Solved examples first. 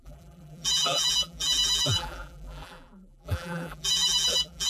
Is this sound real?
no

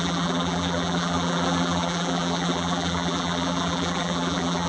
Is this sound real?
no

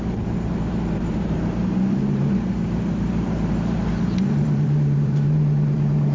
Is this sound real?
no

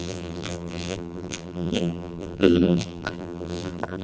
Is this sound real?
no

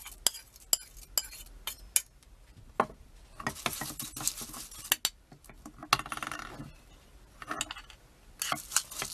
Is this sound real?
yes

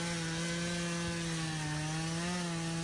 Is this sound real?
yes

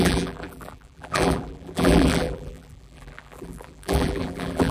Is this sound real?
no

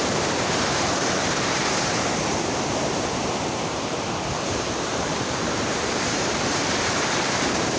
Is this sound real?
no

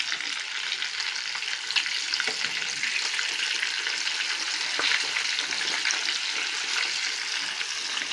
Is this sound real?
yes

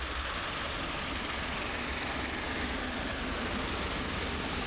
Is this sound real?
yes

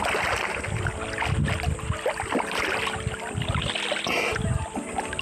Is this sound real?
yes